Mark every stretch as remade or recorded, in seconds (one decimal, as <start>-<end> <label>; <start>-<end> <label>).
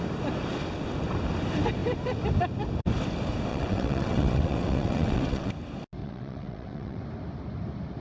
0.0-3.5 recorded; 3.5-5.5 remade; 5.5-6.0 recorded; 6.0-7.0 remade; 7.0-8.0 recorded